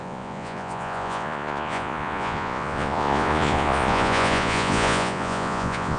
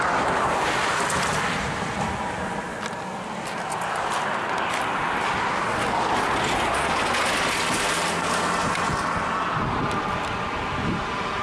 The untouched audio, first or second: second